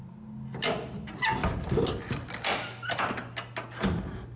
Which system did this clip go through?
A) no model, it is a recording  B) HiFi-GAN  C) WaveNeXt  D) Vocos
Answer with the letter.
A